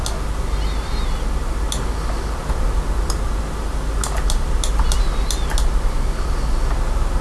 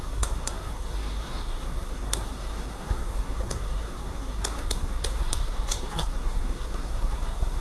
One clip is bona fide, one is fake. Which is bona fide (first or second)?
first